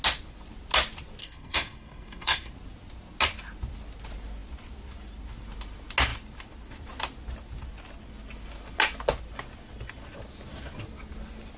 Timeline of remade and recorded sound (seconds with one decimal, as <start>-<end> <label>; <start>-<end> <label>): 0.0-1.2 recorded; 1.2-2.5 remade; 2.5-11.6 recorded